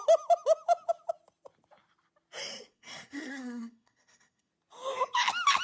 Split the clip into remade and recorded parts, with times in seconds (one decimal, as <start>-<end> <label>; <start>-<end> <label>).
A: 0.0-2.5 recorded; 2.5-4.5 remade; 4.5-5.6 recorded